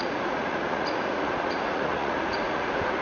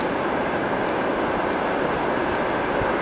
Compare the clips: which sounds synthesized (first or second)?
first